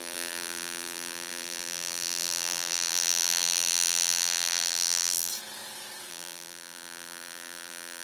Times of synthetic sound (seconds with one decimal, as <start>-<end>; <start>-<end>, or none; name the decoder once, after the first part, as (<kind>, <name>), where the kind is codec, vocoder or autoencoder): 0.0-5.3 (vocoder, BigVGAN v2); 6.1-8.0